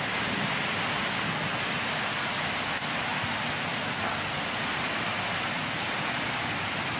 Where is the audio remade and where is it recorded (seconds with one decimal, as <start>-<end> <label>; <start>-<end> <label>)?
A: 0.0-7.0 recorded